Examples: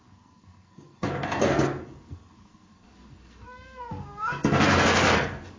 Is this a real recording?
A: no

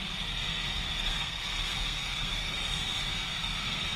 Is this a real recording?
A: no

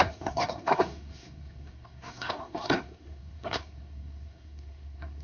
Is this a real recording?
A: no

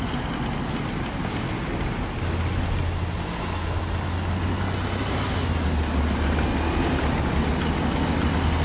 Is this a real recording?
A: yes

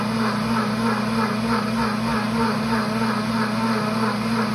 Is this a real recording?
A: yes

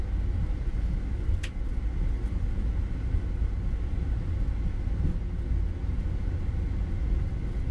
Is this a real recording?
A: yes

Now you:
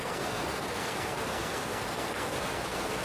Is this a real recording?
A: no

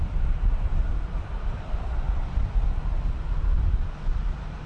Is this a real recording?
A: yes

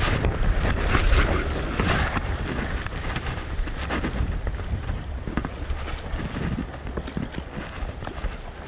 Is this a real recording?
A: yes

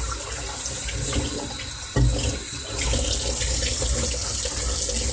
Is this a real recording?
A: yes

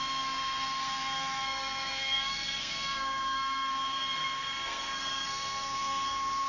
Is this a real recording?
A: no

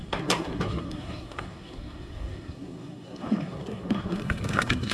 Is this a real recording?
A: no